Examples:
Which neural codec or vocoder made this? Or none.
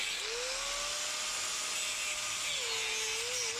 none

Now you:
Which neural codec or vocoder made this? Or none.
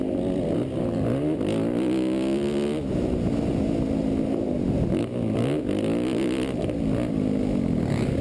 none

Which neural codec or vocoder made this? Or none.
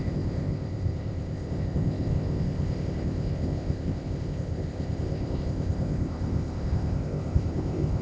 codec, ZipCodec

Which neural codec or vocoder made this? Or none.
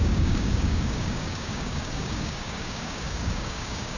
codec, DAC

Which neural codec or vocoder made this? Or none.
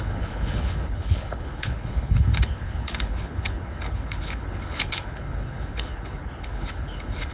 codec, HILCodec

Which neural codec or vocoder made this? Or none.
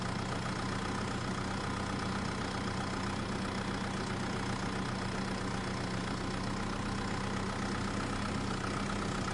none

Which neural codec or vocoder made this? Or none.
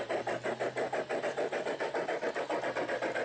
none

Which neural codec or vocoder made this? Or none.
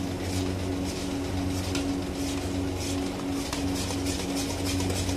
none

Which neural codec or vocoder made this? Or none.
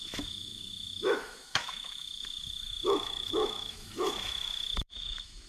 autoencoder, DAC-VAE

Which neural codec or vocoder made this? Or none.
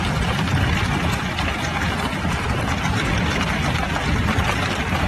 none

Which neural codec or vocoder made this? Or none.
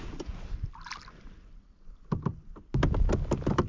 none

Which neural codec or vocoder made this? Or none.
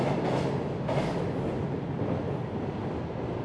none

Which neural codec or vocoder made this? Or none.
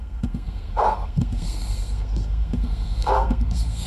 codec, SNAC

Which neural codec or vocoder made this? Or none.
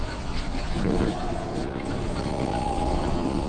vocoder, Vocos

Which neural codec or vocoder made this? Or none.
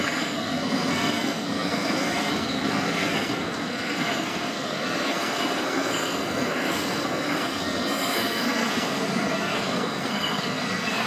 codec, SNAC